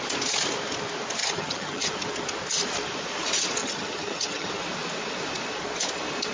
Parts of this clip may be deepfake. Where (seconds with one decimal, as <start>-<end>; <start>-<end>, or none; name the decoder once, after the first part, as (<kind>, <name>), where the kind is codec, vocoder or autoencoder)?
1.2-1.9 (vocoder, HiFi-GAN); 3.6-4.5

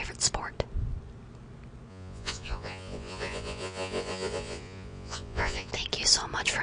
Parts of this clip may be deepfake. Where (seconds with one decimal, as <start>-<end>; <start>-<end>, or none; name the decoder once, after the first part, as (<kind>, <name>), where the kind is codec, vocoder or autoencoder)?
1.9-5.7 (vocoder, Vocos)